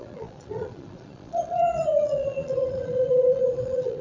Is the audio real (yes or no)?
no